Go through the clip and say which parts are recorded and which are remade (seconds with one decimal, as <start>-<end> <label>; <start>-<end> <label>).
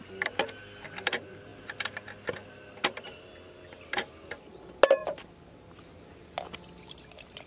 0.0-7.5 recorded